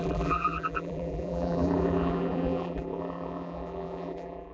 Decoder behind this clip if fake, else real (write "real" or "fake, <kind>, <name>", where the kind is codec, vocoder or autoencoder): fake, vocoder, BigVGAN v2